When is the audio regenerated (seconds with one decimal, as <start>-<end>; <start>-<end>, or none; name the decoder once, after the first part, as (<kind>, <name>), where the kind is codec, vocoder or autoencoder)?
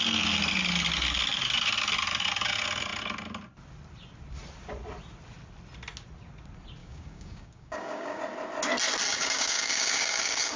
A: 6.8-8.2 (codec, DAC); 9.1-10.6